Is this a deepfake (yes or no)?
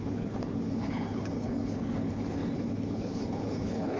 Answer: yes